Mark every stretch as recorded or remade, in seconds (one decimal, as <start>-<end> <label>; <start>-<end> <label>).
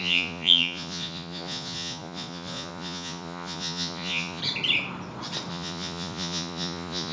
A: 0.0-4.4 remade; 4.4-5.5 recorded; 5.5-7.1 remade